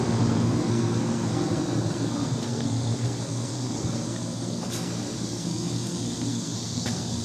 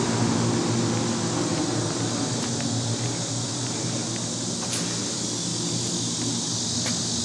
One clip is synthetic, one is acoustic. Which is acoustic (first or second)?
second